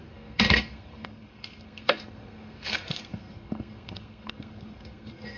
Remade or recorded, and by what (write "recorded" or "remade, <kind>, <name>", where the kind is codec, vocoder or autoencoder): remade, codec, SNAC